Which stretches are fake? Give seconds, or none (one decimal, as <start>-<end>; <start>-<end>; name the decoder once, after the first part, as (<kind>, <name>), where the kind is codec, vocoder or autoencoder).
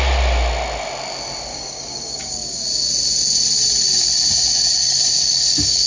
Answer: 1.5-2.6 (codec, DAC); 4.8-5.9